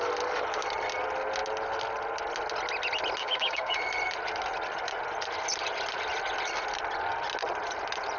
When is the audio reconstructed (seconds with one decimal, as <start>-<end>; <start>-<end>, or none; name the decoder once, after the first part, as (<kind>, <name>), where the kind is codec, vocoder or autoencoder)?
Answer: 3.2-3.8 (codec, DAC)

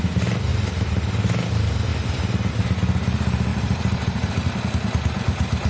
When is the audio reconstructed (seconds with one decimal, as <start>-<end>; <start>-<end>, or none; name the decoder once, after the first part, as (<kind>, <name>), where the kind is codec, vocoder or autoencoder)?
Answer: 0.5-1.5 (vocoder, BigVGAN v2); 3.5-4.3